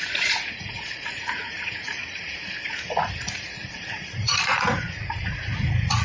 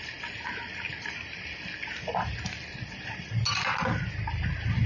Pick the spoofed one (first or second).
first